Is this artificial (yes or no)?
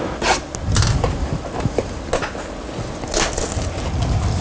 no